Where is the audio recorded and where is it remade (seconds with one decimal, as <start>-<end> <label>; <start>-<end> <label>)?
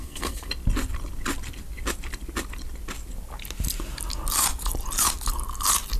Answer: 0.0-0.5 remade; 0.5-6.0 recorded